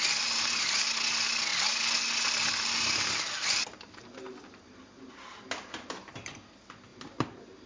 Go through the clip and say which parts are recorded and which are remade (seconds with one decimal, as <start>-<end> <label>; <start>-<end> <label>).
0.0-7.7 recorded